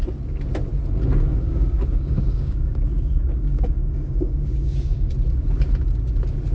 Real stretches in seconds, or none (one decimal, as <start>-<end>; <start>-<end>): 0.0-1.3; 5.1-6.5